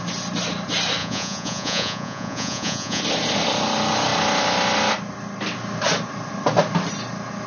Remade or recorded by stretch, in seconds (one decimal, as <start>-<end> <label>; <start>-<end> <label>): 0.0-1.0 recorded; 1.0-3.0 remade; 3.0-7.5 recorded